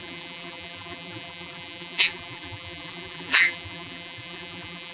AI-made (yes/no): yes